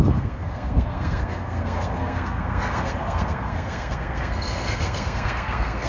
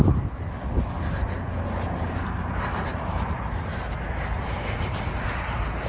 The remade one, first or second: first